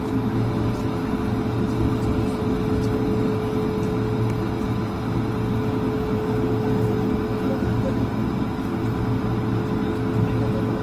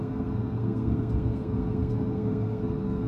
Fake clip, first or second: second